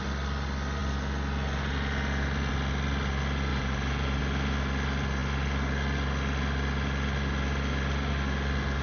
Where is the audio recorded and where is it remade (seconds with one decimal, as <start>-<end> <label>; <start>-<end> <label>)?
0.0-3.5 recorded; 3.5-4.2 remade; 4.2-8.8 recorded